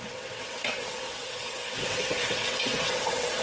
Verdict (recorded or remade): remade